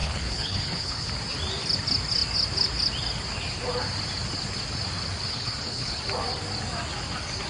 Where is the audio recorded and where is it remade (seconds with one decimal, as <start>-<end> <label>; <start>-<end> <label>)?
0.0-1.1 remade; 1.1-5.3 recorded; 5.3-6.0 remade; 6.0-7.5 recorded